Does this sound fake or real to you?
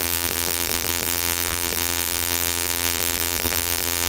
fake